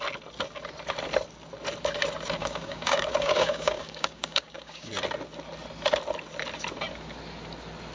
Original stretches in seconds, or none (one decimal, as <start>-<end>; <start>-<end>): 0.0-2.4; 4.9-7.9